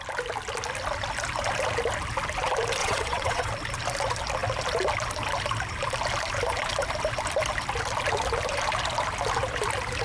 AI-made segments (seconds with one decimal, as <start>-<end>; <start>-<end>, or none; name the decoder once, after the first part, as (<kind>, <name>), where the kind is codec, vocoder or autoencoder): 2.8-3.5 (vocoder, WaveNeXt)